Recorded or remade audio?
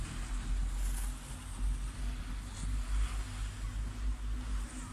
recorded